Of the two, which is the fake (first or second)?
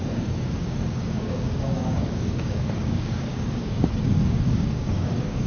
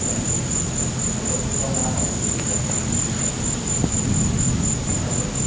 first